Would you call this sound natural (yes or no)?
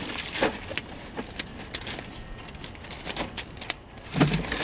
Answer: yes